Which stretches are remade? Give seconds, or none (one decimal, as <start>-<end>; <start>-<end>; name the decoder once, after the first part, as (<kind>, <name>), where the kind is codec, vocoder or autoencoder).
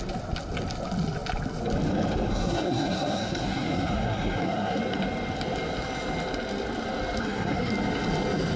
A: 2.3-4.8 (codec, SNAC); 7.2-7.7